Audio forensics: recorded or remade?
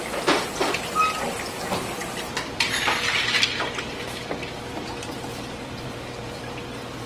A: remade